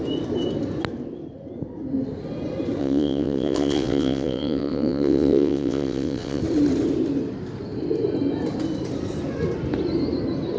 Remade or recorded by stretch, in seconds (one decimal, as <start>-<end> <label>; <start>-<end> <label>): 0.0-2.8 recorded; 2.8-6.4 remade; 6.4-10.6 recorded